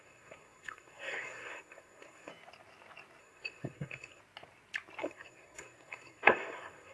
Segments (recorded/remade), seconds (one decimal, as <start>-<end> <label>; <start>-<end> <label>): 0.0-2.3 remade; 2.3-3.2 recorded; 3.2-4.2 remade; 4.2-5.0 recorded; 5.0-6.9 remade